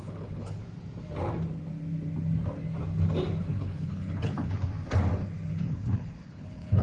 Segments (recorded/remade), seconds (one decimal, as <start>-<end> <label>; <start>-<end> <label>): 0.0-0.6 remade; 0.6-3.4 recorded; 3.4-4.7 remade; 4.7-5.5 recorded; 5.5-6.8 remade